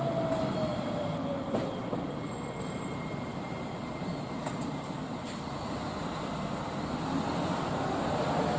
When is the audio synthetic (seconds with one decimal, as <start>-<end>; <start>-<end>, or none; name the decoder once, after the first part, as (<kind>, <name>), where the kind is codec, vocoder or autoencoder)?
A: 0.7-5.5 (vocoder, BigVGAN v2)